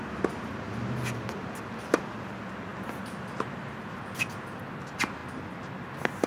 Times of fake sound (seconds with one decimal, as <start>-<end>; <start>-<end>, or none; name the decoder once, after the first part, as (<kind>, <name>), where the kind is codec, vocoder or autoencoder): none